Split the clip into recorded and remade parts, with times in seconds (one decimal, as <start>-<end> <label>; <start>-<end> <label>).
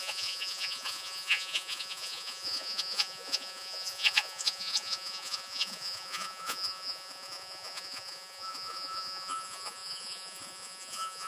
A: 0.0-11.3 remade